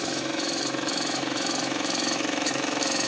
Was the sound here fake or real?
fake